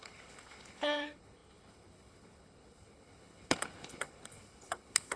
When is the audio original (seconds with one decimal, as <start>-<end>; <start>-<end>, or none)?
none